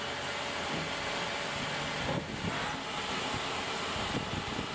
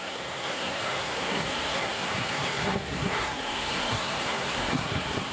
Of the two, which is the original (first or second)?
first